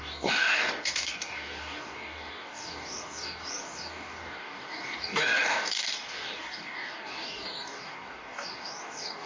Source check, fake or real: fake